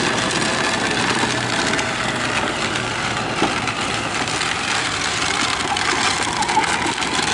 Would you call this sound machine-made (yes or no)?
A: no